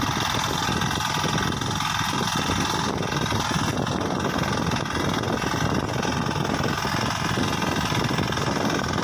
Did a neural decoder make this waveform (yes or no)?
no